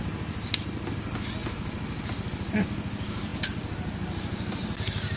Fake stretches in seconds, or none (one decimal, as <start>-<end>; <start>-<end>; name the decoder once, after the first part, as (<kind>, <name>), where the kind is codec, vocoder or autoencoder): none